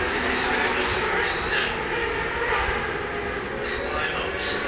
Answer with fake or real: real